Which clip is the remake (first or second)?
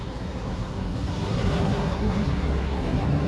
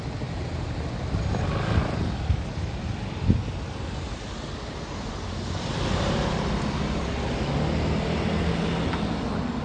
first